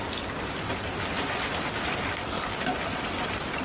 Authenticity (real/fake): real